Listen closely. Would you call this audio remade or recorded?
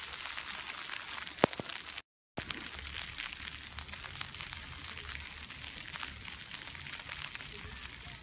recorded